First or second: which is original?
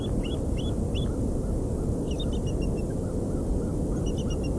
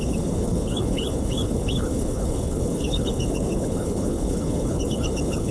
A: first